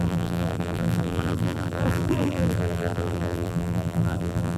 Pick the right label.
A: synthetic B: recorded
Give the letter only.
A